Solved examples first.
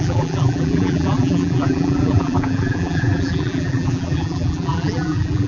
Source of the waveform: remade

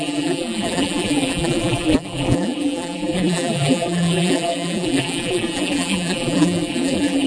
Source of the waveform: remade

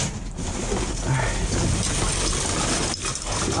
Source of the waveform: recorded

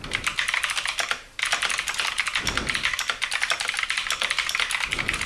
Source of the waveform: recorded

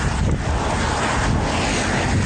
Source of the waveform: recorded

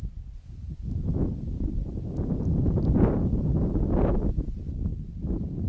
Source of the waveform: recorded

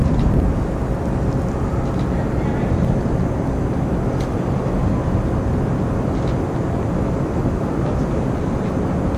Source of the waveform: recorded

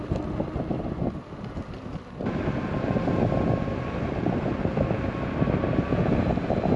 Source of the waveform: recorded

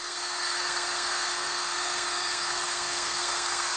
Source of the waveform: remade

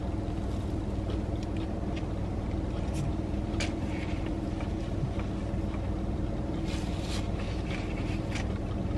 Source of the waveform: recorded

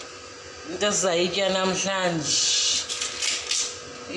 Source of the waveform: recorded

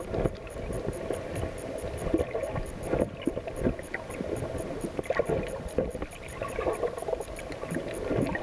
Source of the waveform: remade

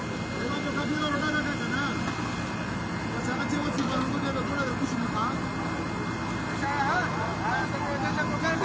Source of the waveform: recorded